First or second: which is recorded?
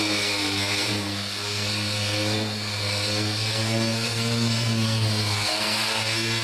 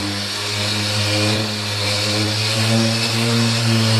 second